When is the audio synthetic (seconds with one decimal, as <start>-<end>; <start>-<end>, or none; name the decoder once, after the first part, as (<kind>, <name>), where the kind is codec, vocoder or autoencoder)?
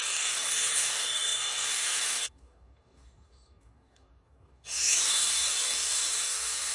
0.0-6.7 (codec, DAC)